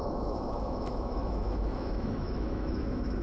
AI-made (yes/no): yes